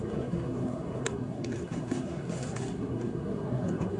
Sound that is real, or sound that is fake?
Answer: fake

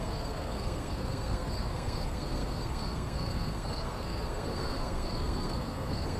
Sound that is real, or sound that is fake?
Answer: fake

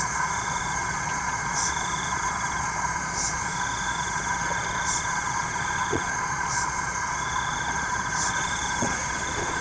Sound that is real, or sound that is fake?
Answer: fake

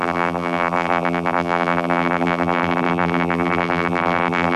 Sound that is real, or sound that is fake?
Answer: fake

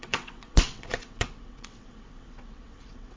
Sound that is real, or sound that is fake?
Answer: fake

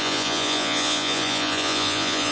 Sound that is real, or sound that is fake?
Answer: fake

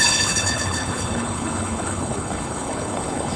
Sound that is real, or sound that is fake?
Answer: fake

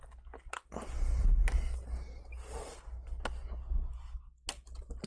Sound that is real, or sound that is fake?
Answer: real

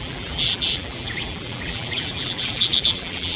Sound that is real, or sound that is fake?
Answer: fake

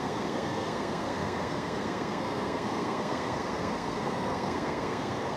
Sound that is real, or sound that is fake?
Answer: fake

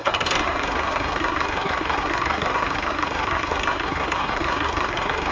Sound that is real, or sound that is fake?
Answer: fake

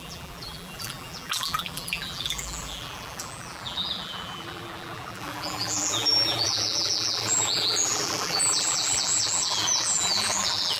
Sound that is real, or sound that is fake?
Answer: fake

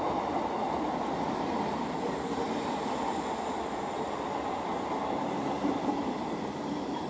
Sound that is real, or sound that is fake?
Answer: real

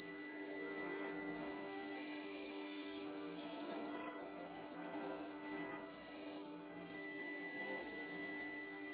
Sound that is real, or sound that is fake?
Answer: fake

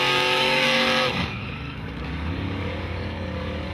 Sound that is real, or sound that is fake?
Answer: fake